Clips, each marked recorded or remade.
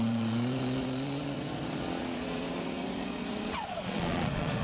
remade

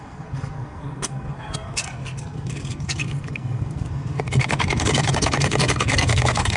remade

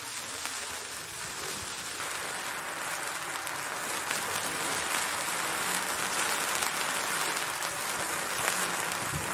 recorded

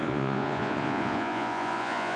remade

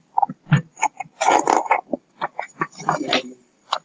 recorded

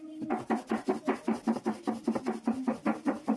recorded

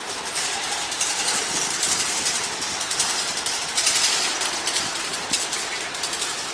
remade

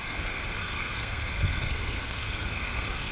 remade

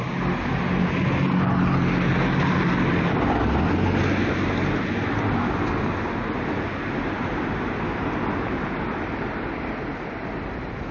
recorded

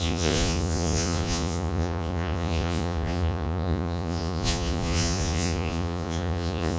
remade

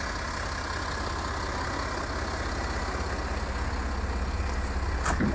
recorded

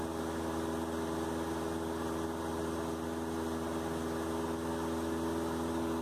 recorded